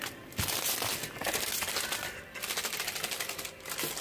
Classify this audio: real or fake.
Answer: real